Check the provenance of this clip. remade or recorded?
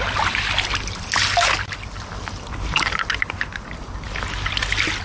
recorded